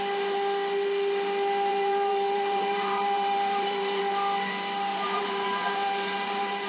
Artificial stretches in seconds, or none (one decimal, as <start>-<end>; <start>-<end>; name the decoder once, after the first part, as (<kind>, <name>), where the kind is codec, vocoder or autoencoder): 1.7-4.0 (vocoder, BigVGAN v2); 4.9-6.7